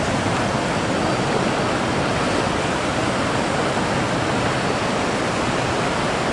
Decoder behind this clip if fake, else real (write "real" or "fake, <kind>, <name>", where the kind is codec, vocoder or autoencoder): real